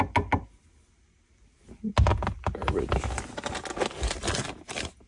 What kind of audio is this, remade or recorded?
recorded